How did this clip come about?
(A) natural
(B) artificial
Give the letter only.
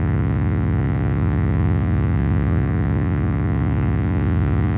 B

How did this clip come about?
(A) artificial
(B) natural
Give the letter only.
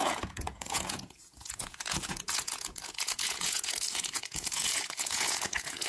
A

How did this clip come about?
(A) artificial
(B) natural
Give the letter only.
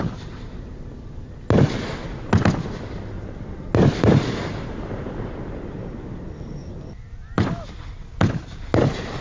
B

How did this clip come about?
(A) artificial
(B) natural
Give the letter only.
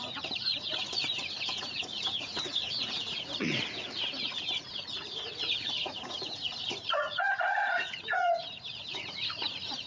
A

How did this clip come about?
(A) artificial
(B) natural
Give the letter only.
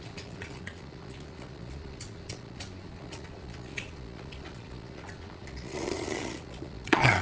A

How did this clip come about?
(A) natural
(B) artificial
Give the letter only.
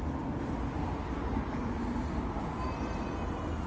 A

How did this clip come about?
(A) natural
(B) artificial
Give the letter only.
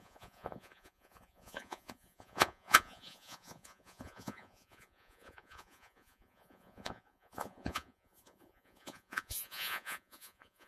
B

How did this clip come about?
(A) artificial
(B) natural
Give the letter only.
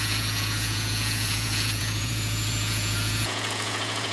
A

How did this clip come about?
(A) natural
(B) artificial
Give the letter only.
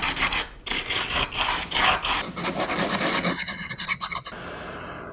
A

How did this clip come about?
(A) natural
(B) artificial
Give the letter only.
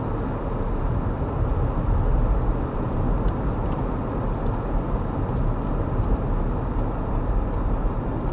A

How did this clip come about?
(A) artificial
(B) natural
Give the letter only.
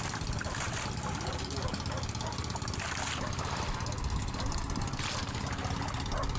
B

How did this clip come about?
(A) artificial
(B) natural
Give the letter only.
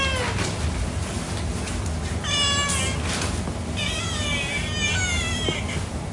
B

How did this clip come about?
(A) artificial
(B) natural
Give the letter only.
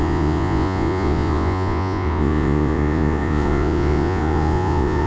A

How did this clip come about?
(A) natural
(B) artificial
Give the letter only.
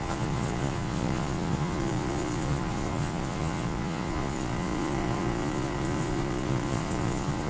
B